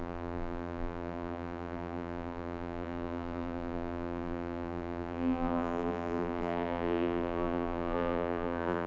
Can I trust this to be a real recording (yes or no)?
no